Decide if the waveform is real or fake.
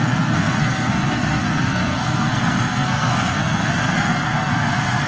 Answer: fake